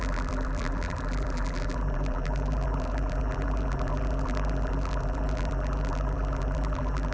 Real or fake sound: fake